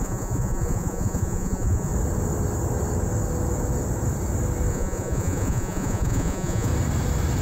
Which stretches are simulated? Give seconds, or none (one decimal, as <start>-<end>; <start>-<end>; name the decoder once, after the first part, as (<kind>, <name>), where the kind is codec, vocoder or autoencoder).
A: 0.0-1.9 (vocoder, Vocos); 4.7-6.7